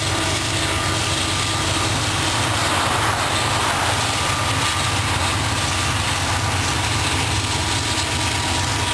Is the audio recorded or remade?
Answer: recorded